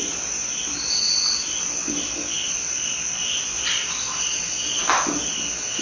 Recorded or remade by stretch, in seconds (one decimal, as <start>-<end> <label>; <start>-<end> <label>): 0.0-5.8 recorded